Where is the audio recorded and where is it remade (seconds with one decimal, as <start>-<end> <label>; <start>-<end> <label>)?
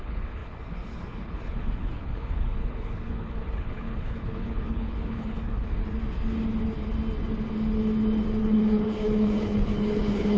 0.0-5.8 remade; 5.8-8.4 recorded; 8.4-10.4 remade